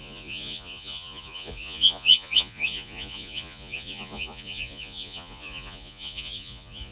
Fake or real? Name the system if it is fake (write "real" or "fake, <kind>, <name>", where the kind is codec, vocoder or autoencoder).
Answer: fake, vocoder, Vocos